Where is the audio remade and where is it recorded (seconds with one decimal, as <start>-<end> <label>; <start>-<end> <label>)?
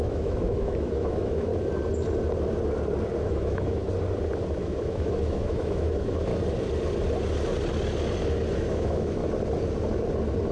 0.0-1.5 remade; 1.5-3.2 recorded; 3.2-3.8 remade; 3.8-4.6 recorded; 4.6-6.3 remade; 6.3-8.5 recorded; 8.5-9.2 remade; 9.2-10.5 recorded